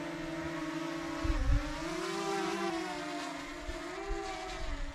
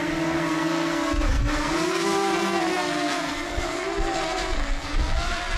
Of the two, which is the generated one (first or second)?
second